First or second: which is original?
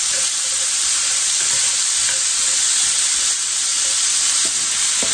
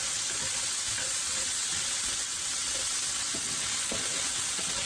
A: first